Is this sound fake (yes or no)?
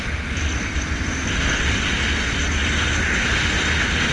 no